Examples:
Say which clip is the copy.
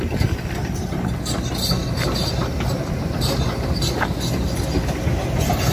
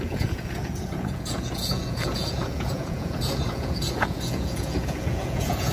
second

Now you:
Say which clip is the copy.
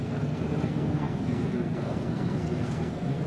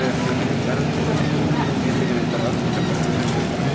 first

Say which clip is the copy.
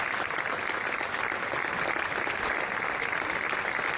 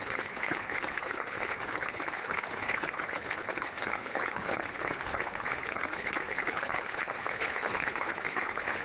second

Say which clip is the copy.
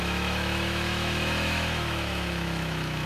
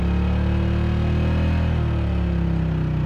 first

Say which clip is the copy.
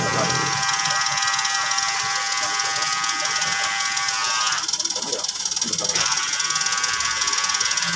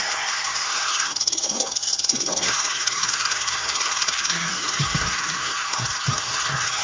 second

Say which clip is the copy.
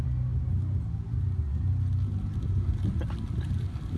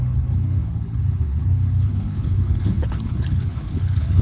second